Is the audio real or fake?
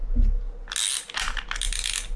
real